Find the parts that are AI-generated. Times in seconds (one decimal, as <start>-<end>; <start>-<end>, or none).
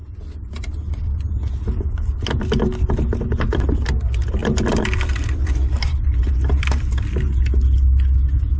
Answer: none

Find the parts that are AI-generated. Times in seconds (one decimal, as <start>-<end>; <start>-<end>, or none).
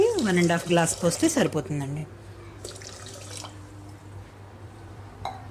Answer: 0.0-1.0; 1.5-2.0; 4.6-5.5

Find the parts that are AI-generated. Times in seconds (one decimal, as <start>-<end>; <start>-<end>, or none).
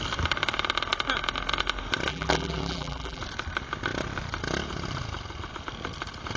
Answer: 2.1-3.2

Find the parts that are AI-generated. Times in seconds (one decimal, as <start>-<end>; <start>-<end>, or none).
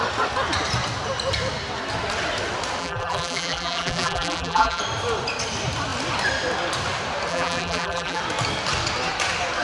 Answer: 2.8-4.8; 7.3-8.2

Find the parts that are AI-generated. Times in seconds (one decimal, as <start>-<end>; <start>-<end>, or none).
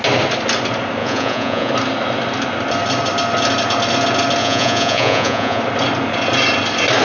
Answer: 1.0-1.7; 4.4-5.6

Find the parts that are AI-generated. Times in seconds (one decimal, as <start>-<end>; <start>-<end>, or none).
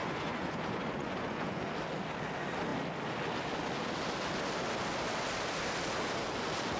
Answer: 0.0-1.7